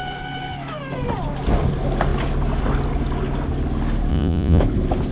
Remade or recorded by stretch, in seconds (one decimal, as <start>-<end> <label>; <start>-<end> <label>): 0.0-4.1 recorded; 4.1-4.6 remade; 4.6-5.1 recorded